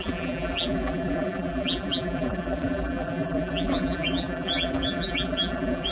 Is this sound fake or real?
fake